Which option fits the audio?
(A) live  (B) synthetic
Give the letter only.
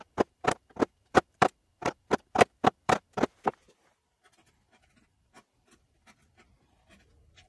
B